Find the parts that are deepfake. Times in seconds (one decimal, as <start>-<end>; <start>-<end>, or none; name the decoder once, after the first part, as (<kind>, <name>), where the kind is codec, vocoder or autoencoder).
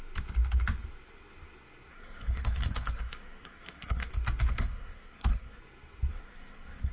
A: 1.9-4.1 (codec, SNAC); 4.5-5.6; 6.1-6.9